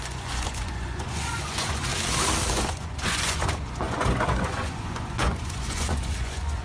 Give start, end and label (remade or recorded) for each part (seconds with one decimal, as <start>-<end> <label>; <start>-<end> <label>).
0.0-1.9 remade; 1.9-2.5 recorded; 2.5-6.6 remade